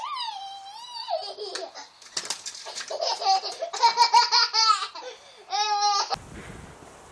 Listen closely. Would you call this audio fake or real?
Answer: real